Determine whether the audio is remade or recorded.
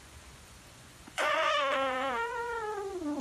remade